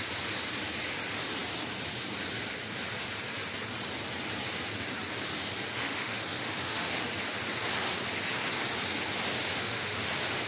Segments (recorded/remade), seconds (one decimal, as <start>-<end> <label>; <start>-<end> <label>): 0.0-5.8 recorded; 5.8-7.0 remade; 7.0-9.5 recorded; 9.5-10.1 remade; 10.1-10.5 recorded